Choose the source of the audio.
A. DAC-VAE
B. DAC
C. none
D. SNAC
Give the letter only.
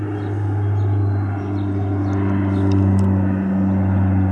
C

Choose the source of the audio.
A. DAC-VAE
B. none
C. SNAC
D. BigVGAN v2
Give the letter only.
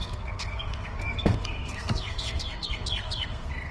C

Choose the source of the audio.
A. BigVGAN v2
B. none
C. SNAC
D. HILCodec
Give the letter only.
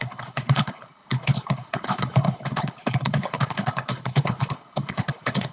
D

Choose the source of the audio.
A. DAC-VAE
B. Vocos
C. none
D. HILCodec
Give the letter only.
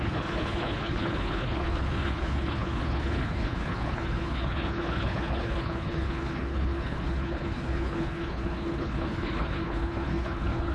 D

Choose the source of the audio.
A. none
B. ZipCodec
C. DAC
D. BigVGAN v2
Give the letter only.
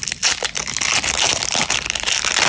A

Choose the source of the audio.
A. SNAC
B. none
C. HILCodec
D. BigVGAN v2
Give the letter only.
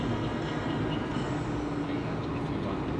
B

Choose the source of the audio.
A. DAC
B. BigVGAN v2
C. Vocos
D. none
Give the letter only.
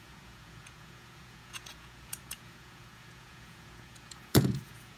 C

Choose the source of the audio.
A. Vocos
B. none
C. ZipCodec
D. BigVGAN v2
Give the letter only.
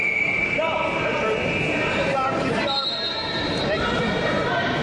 D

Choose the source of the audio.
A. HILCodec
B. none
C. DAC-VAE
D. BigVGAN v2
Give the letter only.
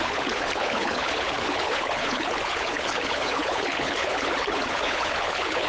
A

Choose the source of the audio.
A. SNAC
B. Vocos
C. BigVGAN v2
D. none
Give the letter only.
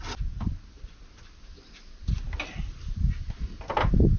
D